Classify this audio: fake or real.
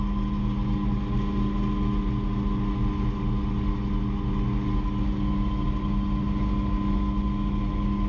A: real